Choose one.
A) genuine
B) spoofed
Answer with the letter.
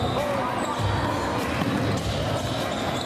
A